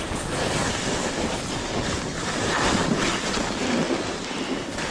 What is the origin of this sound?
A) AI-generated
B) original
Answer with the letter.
B